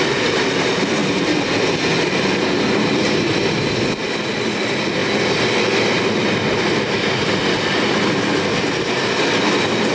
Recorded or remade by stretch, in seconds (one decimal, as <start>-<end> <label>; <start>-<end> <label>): 0.0-9.9 recorded